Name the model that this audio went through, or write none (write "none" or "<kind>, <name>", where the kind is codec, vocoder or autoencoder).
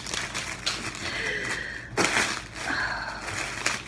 none